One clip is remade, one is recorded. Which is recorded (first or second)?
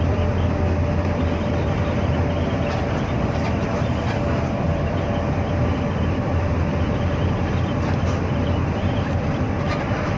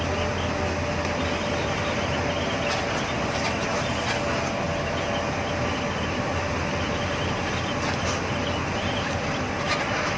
second